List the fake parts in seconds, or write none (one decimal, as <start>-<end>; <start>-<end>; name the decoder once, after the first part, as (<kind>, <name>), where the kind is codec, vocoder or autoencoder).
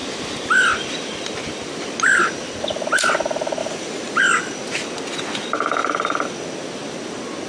3.6-4.2 (vocoder, BigVGAN v2); 5.8-6.3